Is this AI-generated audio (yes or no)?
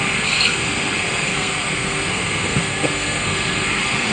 yes